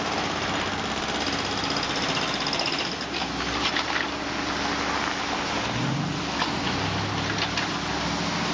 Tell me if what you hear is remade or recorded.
recorded